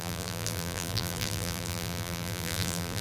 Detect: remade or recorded remade